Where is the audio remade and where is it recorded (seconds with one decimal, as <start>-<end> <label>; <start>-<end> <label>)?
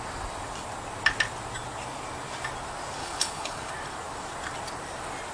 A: 0.0-3.0 recorded; 3.0-3.7 remade; 3.7-5.3 recorded